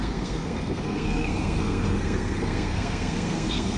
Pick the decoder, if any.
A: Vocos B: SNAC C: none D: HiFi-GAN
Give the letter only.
B